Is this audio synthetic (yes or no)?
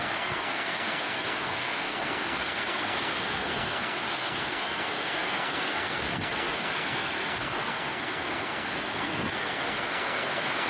yes